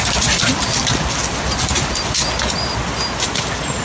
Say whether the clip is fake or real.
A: real